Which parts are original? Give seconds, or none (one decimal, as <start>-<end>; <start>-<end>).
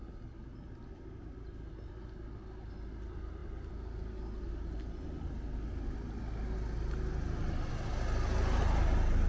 0.0-9.3